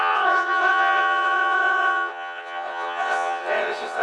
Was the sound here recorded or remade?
remade